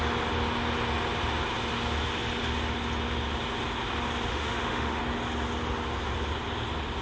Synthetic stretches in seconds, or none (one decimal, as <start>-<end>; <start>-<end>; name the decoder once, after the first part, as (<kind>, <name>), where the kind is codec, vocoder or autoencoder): 4.3-5.0 (autoencoder, DAC-VAE)